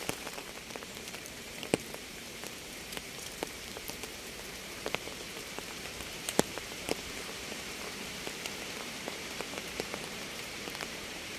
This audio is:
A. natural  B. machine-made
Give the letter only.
B